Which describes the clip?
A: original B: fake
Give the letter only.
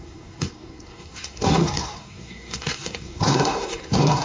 B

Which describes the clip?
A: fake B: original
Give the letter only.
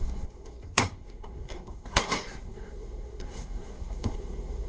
A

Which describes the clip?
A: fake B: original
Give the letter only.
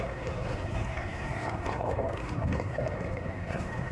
A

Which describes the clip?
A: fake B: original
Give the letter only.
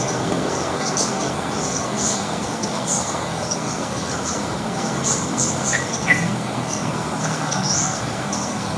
A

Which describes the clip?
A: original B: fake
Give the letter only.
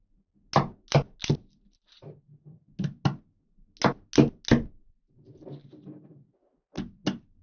A